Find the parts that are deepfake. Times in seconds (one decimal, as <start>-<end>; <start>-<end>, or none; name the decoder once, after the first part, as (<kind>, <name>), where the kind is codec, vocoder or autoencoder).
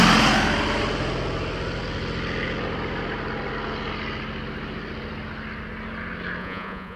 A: 6.4-7.0 (vocoder, Vocos)